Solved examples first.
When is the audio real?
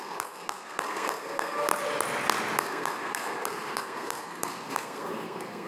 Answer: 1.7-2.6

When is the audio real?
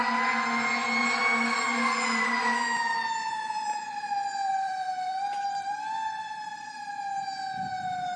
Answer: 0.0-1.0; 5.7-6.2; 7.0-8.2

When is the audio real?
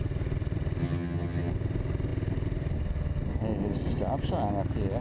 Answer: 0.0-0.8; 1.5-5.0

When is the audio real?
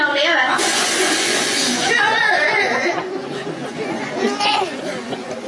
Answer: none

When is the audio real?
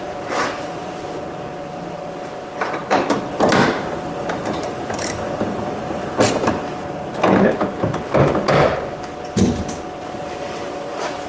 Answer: 6.6-10.2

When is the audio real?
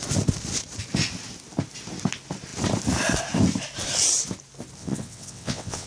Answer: 0.0-4.8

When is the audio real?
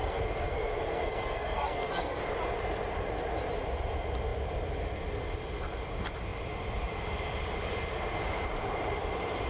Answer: 2.2-9.5